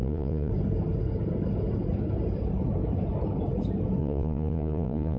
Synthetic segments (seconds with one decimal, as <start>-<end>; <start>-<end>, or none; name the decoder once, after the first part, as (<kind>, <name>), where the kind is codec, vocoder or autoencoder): 0.0-0.5 (vocoder, Vocos); 4.0-5.2